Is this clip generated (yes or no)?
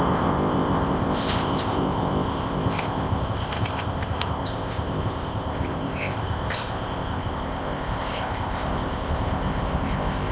yes